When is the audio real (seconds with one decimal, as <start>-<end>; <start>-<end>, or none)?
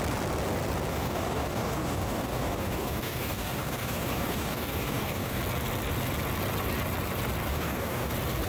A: 0.0-0.9; 5.4-7.5; 8.1-8.5